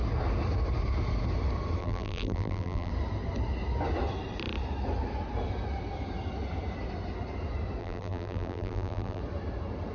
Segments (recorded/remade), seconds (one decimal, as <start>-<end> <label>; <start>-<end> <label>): 0.0-1.8 recorded; 1.8-2.9 remade; 2.9-7.8 recorded; 7.8-9.2 remade; 9.2-9.9 recorded